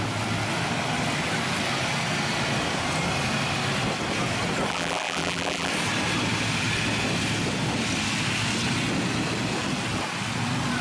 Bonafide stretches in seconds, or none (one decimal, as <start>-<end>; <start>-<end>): 0.0-4.7; 5.7-10.8